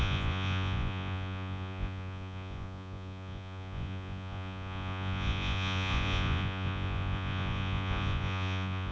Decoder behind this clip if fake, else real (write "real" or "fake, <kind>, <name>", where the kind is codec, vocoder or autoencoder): fake, vocoder, Vocos